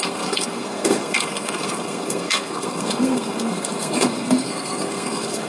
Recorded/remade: remade